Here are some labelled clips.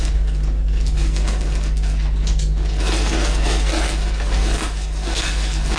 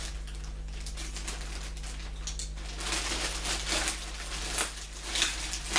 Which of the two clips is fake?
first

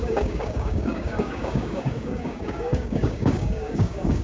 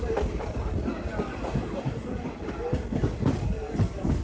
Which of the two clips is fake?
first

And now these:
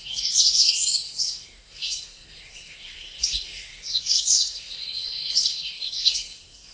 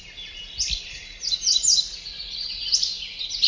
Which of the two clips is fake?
first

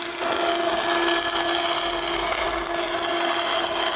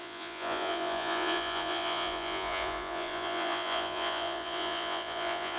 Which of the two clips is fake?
second